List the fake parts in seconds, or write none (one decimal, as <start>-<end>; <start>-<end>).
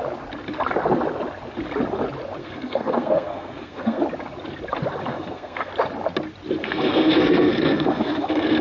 2.4-4.0; 5.1-5.7; 6.6-8.6